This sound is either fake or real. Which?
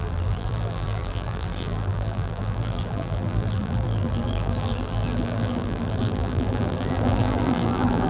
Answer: fake